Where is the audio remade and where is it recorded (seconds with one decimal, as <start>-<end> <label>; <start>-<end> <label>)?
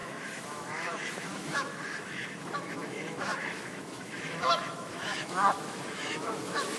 0.0-6.8 remade